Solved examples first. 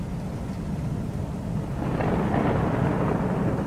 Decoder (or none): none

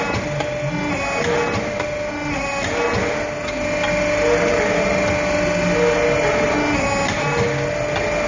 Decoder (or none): none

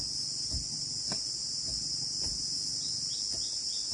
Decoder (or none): none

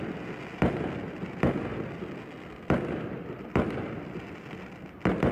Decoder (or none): none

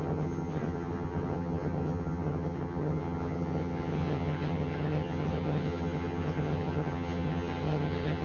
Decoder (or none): vocoder, HiFi-GAN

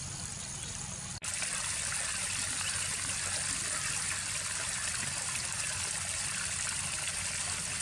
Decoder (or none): none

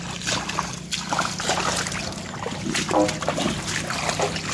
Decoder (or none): none